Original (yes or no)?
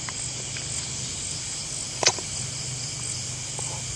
yes